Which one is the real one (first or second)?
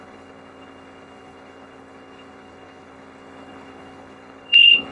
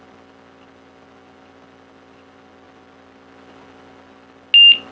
second